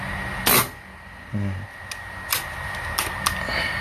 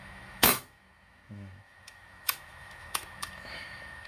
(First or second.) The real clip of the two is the first